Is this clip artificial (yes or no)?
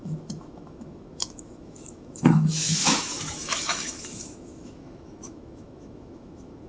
yes